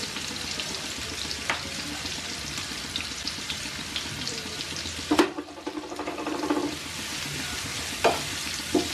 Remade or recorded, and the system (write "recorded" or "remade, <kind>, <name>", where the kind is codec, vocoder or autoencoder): remade, vocoder, BigVGAN v2